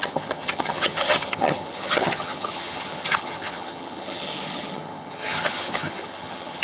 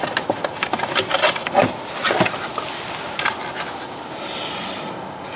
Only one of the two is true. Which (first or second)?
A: second